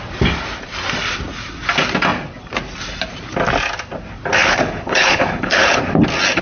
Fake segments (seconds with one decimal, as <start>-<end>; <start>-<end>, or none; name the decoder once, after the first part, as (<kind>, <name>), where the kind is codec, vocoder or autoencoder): 4.4-5.8 (codec, HILCodec)